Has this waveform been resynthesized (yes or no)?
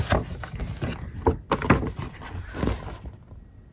no